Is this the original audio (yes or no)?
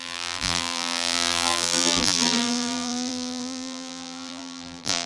no